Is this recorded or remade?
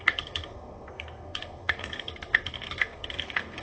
remade